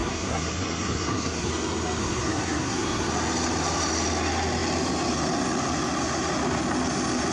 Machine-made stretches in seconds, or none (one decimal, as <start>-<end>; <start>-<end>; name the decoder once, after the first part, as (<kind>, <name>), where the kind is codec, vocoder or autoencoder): 0.0-1.5 (codec, SNAC); 2.0-3.1